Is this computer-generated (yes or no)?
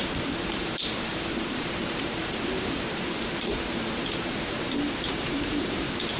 yes